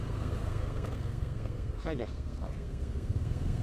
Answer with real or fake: fake